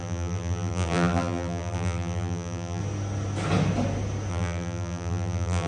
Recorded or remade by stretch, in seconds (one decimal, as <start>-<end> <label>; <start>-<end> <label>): 0.0-2.8 remade; 2.8-4.3 recorded; 4.3-5.7 remade